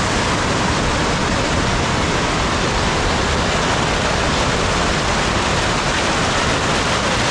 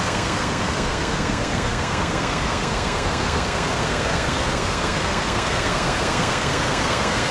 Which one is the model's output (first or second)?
second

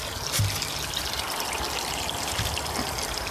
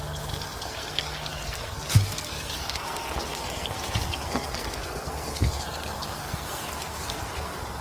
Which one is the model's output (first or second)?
second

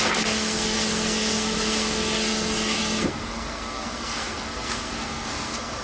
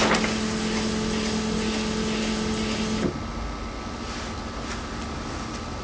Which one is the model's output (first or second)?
first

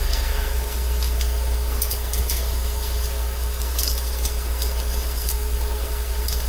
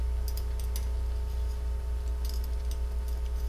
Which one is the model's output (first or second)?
first